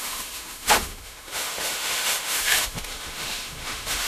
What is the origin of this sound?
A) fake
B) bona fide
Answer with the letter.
A